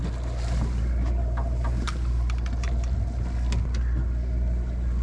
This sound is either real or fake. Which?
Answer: real